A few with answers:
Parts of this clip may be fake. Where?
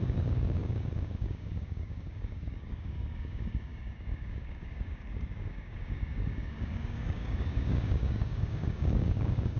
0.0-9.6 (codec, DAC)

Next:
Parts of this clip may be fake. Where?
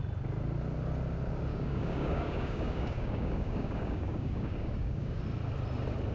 1.5-5.2 (codec, DAC)